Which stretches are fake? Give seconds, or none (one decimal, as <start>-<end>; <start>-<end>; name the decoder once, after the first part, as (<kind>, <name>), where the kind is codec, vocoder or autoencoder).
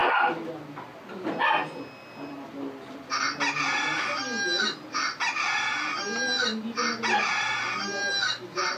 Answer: none